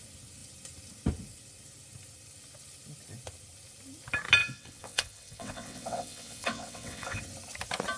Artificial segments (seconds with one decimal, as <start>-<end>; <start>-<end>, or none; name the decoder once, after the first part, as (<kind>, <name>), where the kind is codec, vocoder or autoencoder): 4.4-7.2 (vocoder, WaveNeXt)